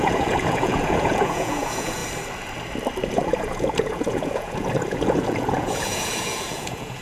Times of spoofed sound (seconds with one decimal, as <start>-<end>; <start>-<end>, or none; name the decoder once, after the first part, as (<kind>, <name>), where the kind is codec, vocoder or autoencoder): 0.0-2.0 (vocoder, Vocos); 3.1-7.0